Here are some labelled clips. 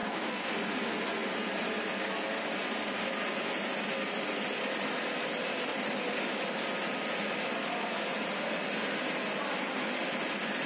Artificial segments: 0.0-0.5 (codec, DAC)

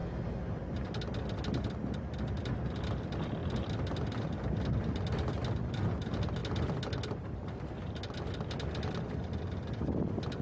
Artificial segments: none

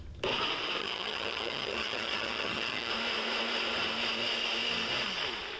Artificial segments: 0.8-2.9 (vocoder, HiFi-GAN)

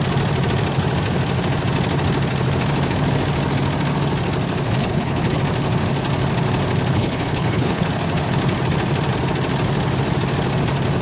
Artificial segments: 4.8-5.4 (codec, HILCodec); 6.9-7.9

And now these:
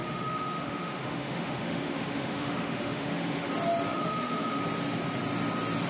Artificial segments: 0.0-3.5 (autoencoder, DAC-VAE); 3.9-4.6